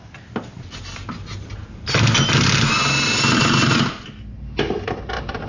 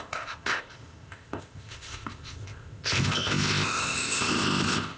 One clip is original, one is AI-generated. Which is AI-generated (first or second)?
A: second